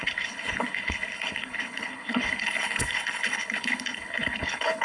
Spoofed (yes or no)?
yes